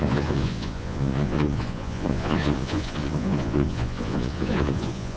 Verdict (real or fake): fake